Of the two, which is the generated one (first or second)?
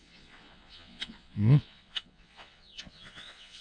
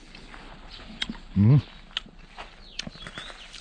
first